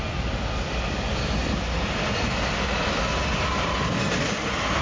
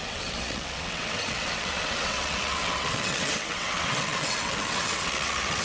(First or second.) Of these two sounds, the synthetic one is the second